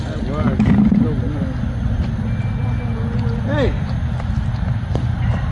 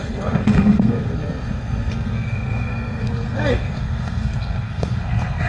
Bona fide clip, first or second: first